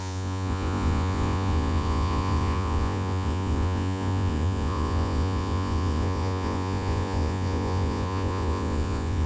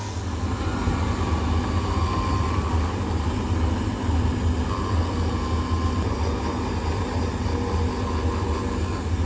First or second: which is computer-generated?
first